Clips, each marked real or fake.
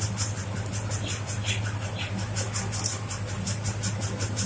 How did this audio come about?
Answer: real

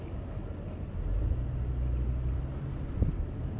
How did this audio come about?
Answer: real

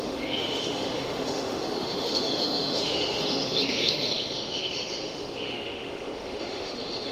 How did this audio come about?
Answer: fake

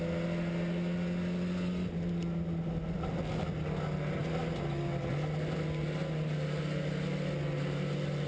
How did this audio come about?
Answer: real